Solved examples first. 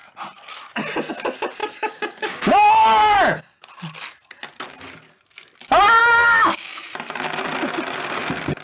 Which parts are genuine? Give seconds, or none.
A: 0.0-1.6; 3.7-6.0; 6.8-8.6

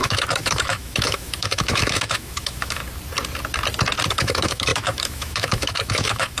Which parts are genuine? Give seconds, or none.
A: 2.8-4.1

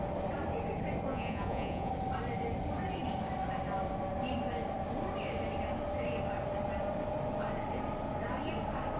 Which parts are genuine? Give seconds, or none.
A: 0.0-1.1; 1.9-9.0

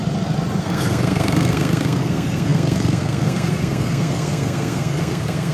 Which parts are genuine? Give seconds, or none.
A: 0.0-0.6